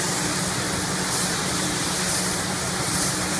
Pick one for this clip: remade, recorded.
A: recorded